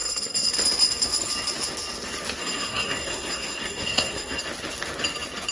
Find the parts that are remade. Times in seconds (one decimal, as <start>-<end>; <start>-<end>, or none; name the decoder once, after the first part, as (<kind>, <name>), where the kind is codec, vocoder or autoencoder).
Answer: 0.0-0.5 (codec, SNAC); 2.4-4.4